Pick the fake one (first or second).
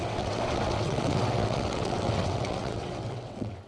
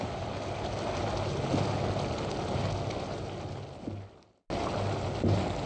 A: first